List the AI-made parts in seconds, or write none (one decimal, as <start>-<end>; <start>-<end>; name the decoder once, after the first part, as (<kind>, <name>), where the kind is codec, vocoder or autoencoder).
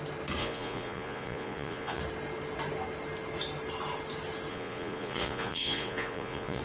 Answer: 0.4-2.0 (vocoder, Vocos); 4.5-6.6